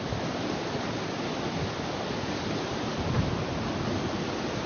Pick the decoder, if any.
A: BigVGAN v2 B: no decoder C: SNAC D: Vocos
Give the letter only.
B